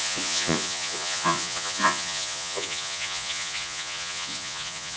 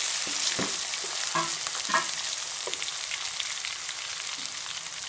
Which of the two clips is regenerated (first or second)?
first